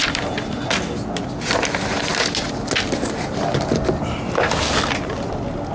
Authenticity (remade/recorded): recorded